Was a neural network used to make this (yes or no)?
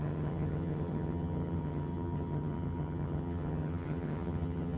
yes